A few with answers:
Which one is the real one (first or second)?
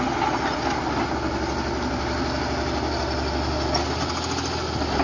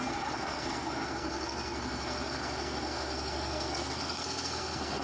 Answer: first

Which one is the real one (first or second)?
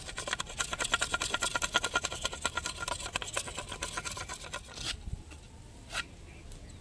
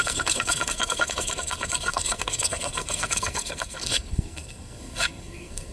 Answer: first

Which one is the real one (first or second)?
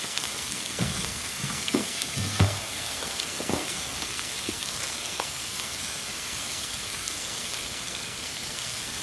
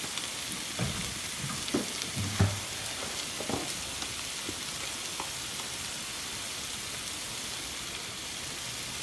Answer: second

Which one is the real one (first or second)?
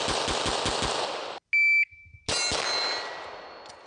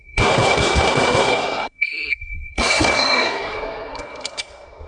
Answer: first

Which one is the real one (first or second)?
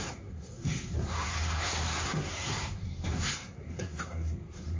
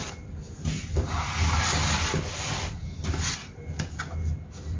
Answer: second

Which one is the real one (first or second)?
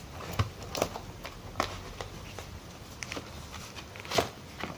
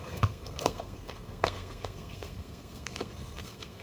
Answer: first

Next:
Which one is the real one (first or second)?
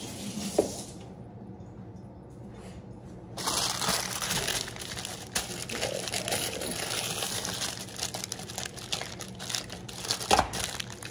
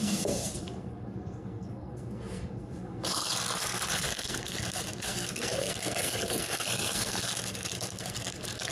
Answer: first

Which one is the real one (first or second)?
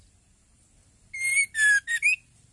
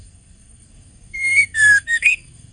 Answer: first